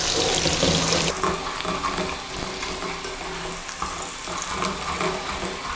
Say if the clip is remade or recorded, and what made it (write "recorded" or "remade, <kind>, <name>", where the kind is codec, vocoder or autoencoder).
recorded